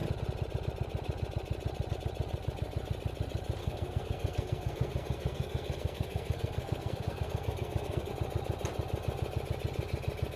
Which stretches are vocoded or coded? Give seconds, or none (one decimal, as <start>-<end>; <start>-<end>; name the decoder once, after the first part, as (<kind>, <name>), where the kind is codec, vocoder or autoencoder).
3.6-8.1 (codec, SNAC)